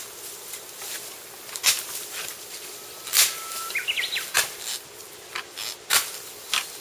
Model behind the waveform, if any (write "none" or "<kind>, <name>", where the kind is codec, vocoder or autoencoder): none